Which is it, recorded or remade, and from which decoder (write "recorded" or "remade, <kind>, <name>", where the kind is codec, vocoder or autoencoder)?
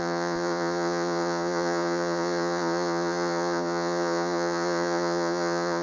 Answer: remade, vocoder, Vocos